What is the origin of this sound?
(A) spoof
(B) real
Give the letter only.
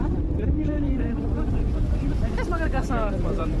A